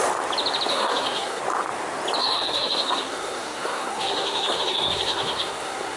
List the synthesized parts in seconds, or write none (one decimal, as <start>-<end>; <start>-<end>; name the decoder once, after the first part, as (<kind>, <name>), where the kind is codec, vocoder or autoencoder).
0.7-1.4 (codec, SNAC); 2.2-6.0